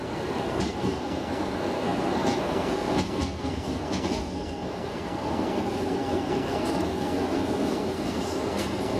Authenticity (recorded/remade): remade